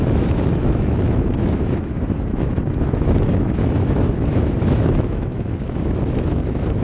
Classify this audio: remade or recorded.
remade